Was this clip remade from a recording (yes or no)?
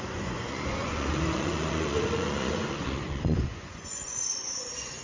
yes